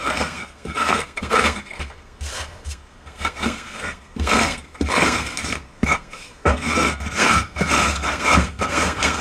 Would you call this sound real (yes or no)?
no